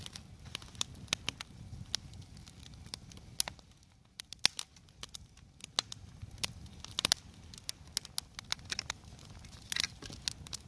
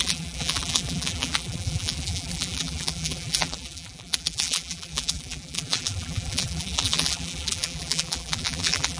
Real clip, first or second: first